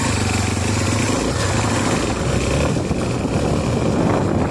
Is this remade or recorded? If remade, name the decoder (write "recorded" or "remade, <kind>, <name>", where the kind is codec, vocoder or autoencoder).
recorded